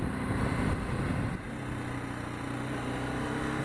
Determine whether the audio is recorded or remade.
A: recorded